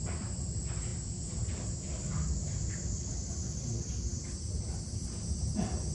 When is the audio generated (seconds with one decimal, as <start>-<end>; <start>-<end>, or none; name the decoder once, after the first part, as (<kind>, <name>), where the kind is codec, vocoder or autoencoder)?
none